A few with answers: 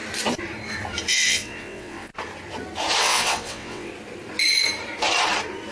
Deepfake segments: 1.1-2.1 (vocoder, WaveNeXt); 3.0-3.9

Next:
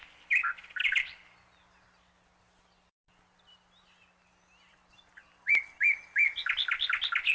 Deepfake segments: none

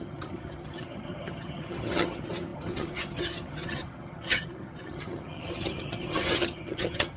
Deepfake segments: 0.0-7.2 (vocoder, HiFi-GAN)

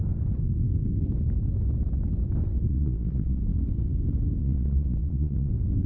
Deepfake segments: 2.7-3.4 (vocoder, Vocos); 4.4-5.5

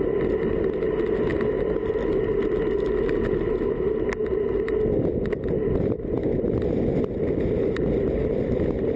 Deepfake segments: none